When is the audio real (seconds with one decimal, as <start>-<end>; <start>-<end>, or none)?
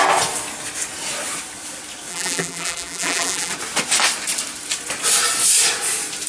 0.0-2.1; 3.5-6.3